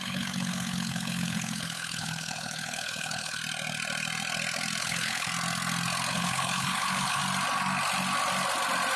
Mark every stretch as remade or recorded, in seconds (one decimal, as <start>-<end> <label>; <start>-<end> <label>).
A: 0.0-3.4 remade; 3.4-4.8 recorded; 4.8-5.3 remade; 5.3-6.1 recorded; 6.1-7.2 remade; 7.2-9.0 recorded